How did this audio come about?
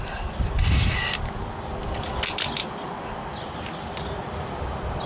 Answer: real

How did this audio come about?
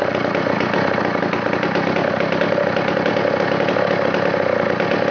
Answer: real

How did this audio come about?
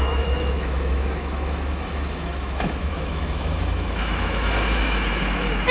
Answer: fake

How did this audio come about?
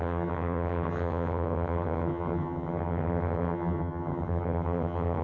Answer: fake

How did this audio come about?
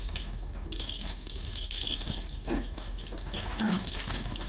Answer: fake